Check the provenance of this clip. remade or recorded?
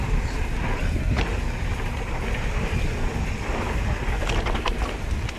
recorded